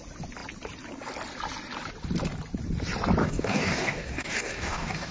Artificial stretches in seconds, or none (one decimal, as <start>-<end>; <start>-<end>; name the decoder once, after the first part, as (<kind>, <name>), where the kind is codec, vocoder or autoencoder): 3.2-5.1 (codec, DAC)